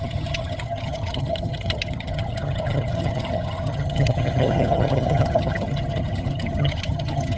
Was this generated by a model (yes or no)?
yes